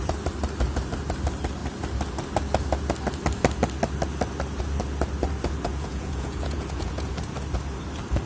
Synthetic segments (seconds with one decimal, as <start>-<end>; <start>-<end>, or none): 5.7-7.1